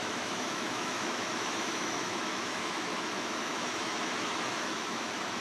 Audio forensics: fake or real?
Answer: fake